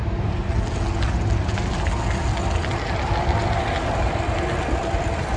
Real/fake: real